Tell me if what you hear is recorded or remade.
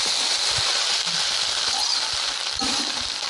remade